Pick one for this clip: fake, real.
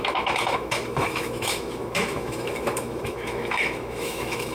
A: fake